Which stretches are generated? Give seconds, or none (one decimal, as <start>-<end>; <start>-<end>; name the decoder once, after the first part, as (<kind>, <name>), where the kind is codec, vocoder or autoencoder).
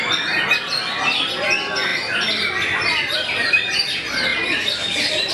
4.3-5.3 (vocoder, BigVGAN v2)